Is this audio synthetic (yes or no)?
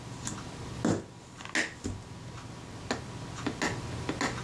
no